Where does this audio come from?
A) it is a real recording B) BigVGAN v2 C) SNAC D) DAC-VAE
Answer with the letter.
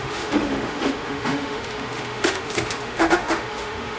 D